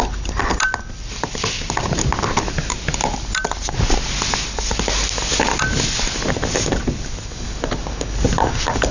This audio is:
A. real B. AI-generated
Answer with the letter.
A